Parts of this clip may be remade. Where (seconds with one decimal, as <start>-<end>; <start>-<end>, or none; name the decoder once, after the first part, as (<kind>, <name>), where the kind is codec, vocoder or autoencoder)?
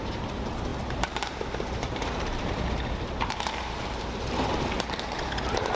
0.0-5.8 (vocoder, BigVGAN v2)